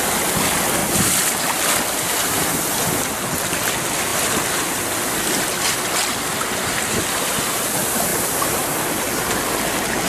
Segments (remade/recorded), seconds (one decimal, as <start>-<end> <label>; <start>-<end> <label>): 0.0-0.8 recorded; 0.8-2.6 remade; 2.6-8.1 recorded; 8.1-8.8 remade; 8.8-10.1 recorded